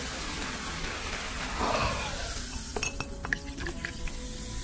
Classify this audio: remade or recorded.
recorded